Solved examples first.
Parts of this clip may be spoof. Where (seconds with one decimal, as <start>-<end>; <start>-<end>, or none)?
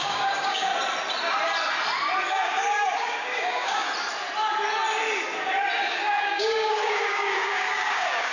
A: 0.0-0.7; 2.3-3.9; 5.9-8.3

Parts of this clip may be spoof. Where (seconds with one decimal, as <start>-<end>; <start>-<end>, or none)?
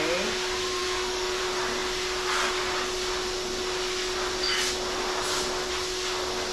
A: 0.8-1.4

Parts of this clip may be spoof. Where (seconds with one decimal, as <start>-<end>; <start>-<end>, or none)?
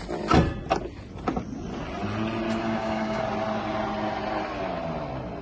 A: 2.6-3.2